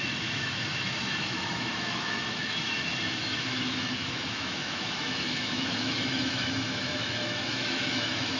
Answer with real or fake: fake